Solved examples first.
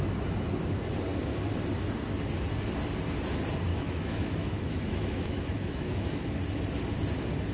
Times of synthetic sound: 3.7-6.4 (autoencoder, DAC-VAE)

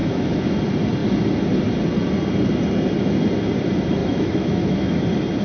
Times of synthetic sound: 0.0-0.5 (autoencoder, DAC-VAE); 4.0-5.0

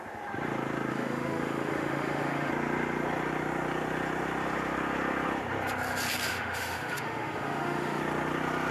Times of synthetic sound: 0.9-2.5 (autoencoder, DAC-VAE); 6.3-8.0